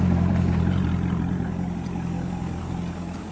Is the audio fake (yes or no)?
no